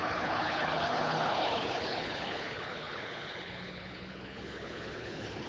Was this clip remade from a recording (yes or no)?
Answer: yes